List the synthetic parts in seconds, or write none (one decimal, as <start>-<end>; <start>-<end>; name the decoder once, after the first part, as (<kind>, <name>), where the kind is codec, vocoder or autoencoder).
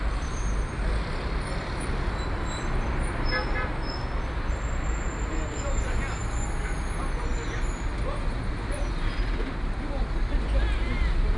none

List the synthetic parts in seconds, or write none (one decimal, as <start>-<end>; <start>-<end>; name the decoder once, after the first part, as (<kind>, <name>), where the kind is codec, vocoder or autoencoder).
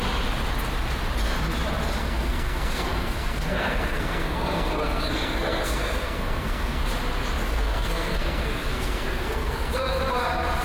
2.0-6.8 (codec, SNAC); 7.4-10.0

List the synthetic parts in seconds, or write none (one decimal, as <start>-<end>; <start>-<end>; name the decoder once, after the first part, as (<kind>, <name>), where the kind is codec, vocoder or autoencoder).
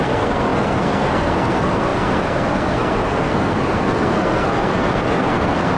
0.0-5.8 (codec, SNAC)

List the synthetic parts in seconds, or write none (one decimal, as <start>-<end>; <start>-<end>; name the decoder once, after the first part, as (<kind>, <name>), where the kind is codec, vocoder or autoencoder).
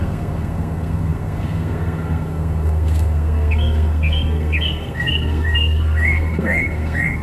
0.0-7.2 (codec, SNAC)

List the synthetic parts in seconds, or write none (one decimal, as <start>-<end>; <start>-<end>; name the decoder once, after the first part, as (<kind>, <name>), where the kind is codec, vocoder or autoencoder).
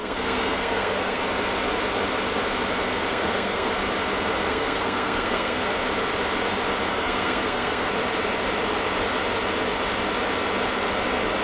0.0-1.2 (codec, SNAC); 3.1-3.7; 4.5-5.7; 6.9-7.9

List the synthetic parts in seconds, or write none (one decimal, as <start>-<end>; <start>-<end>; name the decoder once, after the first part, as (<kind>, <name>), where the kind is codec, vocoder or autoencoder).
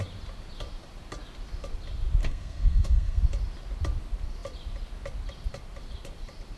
2.2-3.2 (codec, SNAC)